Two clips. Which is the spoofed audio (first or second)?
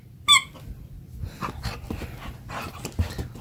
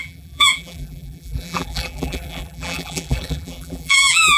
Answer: second